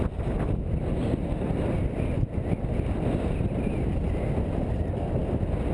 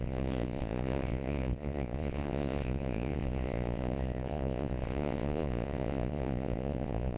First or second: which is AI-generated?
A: second